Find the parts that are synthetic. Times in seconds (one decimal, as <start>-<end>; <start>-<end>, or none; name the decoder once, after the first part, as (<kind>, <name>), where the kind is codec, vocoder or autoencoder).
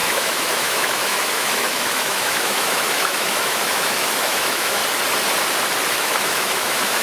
0.0-4.8 (autoencoder, DAC-VAE); 5.9-7.0